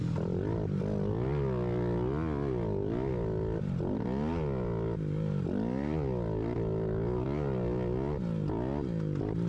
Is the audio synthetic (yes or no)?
no